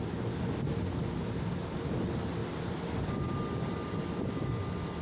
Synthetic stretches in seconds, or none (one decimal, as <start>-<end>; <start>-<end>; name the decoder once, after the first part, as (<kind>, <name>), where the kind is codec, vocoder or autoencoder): none